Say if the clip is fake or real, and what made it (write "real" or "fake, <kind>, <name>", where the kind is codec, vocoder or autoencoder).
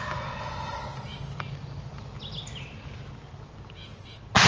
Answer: real